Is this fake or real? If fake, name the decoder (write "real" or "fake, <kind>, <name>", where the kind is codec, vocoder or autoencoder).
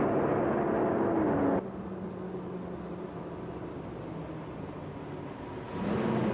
real